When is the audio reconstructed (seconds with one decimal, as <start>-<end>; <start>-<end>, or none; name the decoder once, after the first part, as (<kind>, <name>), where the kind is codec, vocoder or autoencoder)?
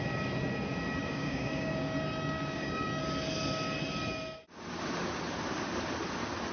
1.0-3.0 (codec, DAC)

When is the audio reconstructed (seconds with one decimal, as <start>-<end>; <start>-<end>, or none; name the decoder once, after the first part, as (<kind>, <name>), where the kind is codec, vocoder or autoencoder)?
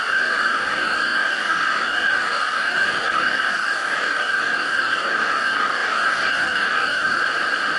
0.0-7.2 (codec, DAC)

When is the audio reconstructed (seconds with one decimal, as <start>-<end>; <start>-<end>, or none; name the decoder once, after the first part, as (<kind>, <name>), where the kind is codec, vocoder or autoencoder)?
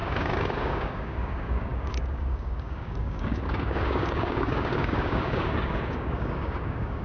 0.0-7.0 (codec, DAC)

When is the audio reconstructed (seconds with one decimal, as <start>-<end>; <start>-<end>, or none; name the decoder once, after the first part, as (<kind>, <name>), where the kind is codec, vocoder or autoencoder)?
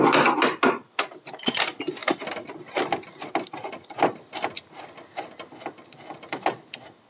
none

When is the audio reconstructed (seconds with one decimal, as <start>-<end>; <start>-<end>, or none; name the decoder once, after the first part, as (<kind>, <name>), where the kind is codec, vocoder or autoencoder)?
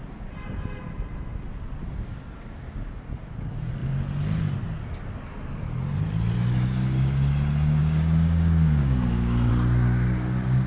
7.8-9.5 (codec, DAC)